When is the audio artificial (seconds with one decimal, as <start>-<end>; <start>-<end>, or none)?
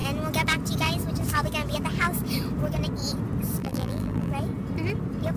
3.6-4.3